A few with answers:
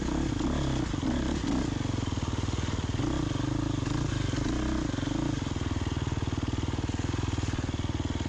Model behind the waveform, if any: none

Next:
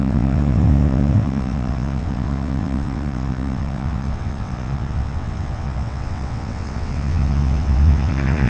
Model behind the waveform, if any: vocoder, WaveNeXt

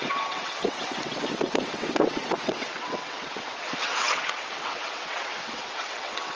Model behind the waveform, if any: vocoder, WaveNeXt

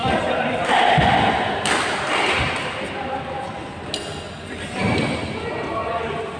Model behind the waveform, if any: none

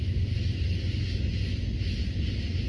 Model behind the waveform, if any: none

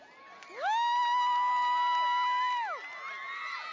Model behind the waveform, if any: none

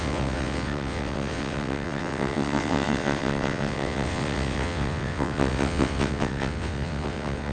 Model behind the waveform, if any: vocoder, WaveNeXt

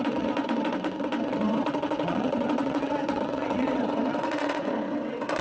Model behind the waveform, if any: vocoder, WaveNeXt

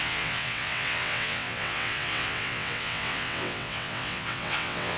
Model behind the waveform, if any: vocoder, WaveNeXt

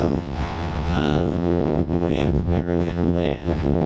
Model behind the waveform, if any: vocoder, WaveNeXt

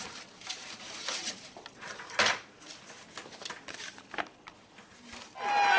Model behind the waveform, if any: none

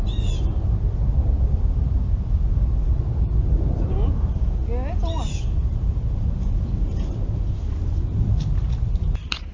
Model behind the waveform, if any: none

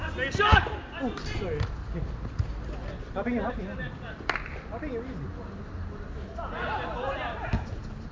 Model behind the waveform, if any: none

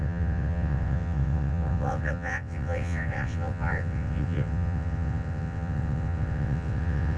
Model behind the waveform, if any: vocoder, WaveNeXt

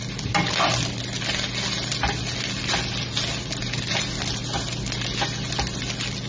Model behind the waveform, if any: none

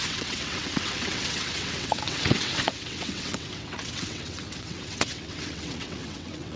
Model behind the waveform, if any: vocoder, WaveNeXt